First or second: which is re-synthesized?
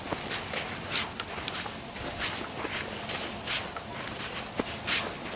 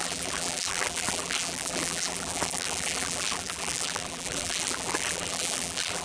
second